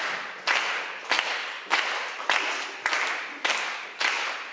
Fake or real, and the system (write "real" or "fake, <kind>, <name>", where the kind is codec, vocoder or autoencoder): real